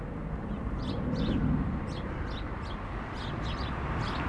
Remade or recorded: recorded